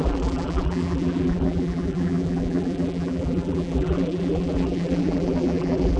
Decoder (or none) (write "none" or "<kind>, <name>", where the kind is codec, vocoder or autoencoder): vocoder, BigVGAN v2